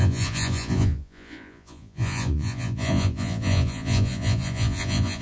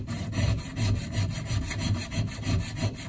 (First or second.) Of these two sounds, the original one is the second